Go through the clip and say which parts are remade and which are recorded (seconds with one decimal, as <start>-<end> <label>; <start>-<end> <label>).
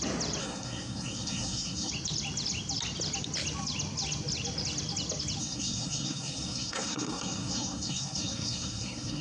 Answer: 0.0-0.4 recorded; 0.4-1.9 remade; 1.9-5.4 recorded; 5.4-9.2 remade